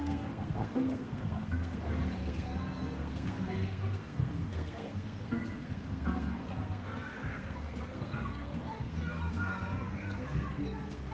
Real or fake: fake